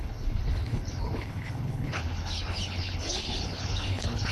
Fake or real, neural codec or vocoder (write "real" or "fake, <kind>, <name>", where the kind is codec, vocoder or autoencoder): fake, codec, HILCodec